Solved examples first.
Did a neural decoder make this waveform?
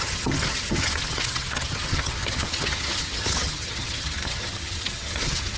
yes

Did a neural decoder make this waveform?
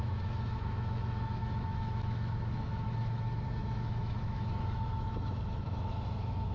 yes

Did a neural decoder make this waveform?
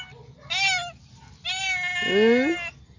no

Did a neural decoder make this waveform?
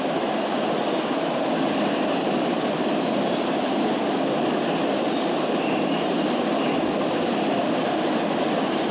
no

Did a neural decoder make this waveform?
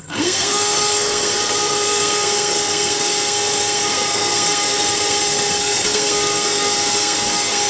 yes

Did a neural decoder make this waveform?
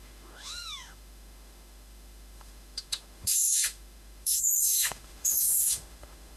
yes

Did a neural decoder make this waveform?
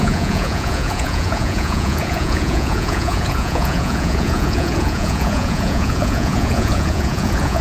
yes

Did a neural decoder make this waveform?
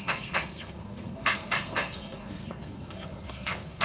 yes